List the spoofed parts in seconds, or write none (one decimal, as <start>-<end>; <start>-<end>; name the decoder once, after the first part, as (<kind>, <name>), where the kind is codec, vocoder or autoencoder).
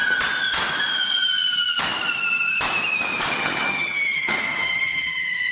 3.3-5.5 (vocoder, HiFi-GAN)